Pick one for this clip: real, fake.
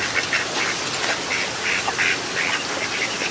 real